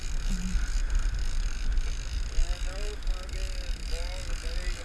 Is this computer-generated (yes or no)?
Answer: no